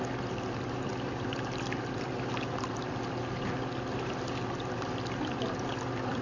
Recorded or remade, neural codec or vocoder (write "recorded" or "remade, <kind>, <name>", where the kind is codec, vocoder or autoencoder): recorded